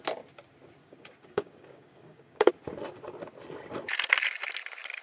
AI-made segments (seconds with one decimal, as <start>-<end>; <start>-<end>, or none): 0.8-2.5